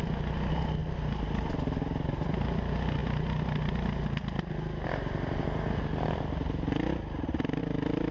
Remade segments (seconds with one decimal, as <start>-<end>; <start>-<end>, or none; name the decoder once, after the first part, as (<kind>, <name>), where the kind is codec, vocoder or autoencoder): none